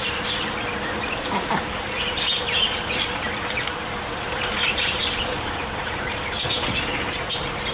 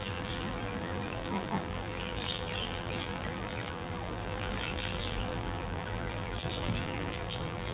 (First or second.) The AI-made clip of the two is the second